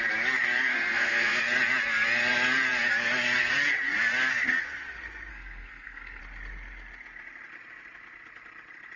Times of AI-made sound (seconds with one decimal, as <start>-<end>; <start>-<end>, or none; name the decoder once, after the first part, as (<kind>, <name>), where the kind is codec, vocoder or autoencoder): 0.7-1.4 (codec, SNAC); 5.3-6.2

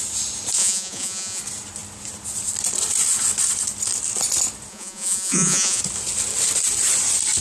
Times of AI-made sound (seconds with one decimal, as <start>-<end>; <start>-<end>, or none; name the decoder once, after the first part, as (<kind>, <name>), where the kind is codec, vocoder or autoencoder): 0.6-1.4 (vocoder, Vocos); 4.7-5.8